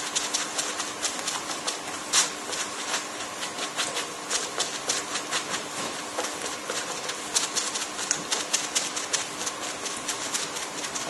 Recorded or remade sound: recorded